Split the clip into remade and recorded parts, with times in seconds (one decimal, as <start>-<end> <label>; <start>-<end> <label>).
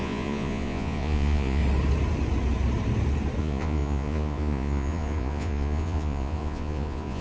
0.0-1.6 remade; 1.6-3.4 recorded; 3.4-7.2 remade